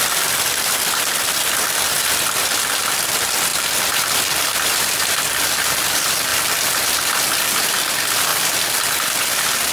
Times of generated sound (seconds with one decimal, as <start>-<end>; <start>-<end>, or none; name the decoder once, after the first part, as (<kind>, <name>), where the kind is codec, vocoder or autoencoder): 0.0-9.7 (vocoder, BigVGAN v2)